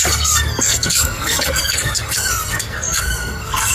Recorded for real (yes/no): no